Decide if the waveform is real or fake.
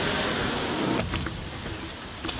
real